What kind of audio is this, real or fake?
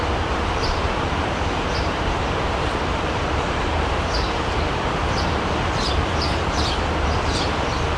fake